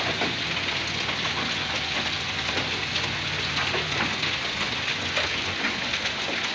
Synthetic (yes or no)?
yes